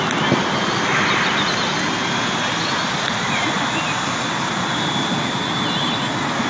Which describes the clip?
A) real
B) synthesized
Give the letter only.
A